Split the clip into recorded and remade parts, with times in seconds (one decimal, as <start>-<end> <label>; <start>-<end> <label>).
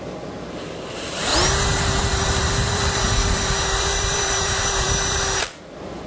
0.0-1.3 remade; 1.3-2.0 recorded; 2.0-6.1 remade